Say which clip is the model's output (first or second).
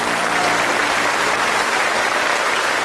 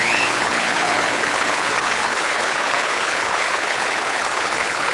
second